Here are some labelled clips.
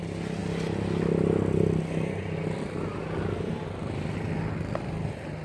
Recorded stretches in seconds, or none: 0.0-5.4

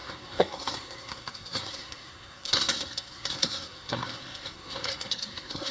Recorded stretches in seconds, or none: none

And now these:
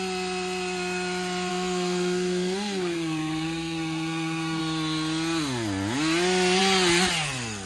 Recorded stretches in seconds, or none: 0.0-1.5; 4.6-7.7

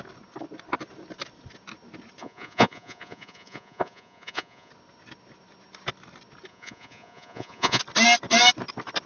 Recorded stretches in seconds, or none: 0.0-2.2; 4.7-6.5; 7.8-9.1

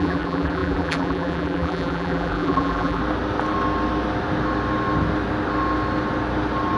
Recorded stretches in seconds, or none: 3.0-6.8

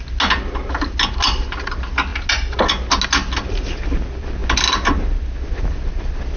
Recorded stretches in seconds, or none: 0.0-6.4

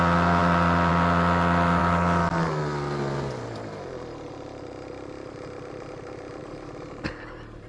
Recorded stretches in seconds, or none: 0.0-7.7

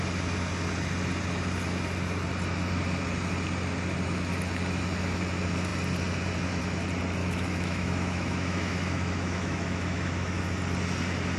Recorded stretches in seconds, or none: 0.0-7.2; 10.4-11.4